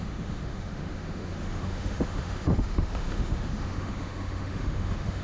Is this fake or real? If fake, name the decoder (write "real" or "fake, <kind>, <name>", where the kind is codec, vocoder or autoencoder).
fake, autoencoder, DAC-VAE